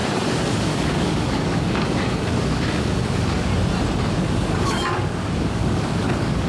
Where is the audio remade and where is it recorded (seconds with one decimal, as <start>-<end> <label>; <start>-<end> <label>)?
0.0-0.6 recorded; 0.6-3.5 remade; 3.5-4.1 recorded; 4.1-6.5 remade